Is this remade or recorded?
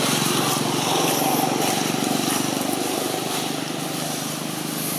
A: recorded